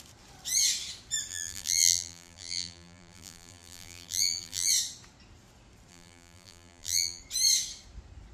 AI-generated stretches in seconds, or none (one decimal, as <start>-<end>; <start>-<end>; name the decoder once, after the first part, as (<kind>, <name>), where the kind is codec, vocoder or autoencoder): 1.3-4.7 (vocoder, BigVGAN v2); 5.9-7.2